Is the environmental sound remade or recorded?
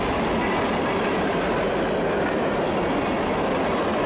recorded